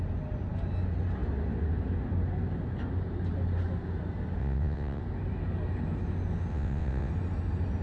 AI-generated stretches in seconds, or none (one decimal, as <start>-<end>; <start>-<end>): 4.4-5.0; 6.5-7.1